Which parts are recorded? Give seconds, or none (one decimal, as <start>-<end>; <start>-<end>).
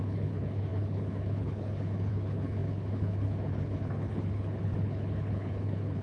none